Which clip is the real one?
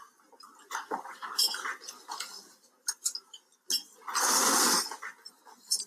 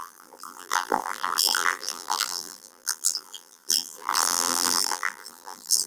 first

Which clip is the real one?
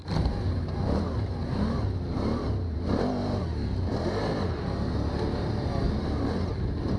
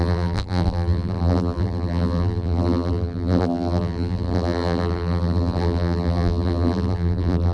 first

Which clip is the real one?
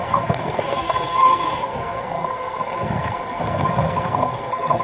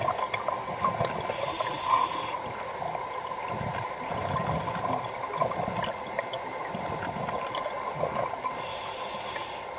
second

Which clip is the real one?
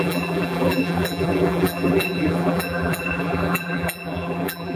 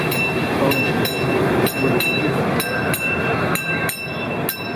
second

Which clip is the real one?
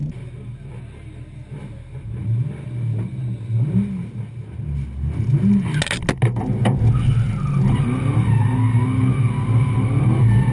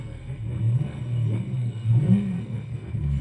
first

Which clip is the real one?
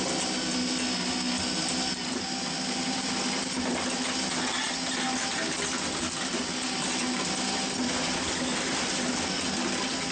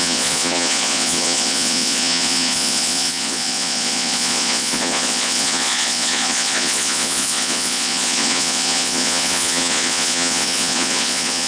first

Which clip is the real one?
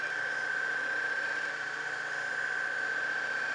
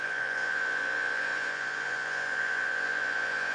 first